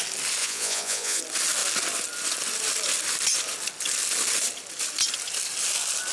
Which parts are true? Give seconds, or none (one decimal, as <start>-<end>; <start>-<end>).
0.0-0.4; 1.2-6.1